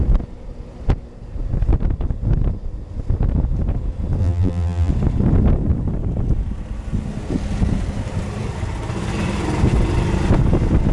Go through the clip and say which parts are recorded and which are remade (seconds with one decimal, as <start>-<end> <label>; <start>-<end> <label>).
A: 0.0-4.2 recorded; 4.2-4.9 remade; 4.9-10.9 recorded